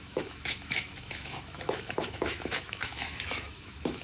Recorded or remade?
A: remade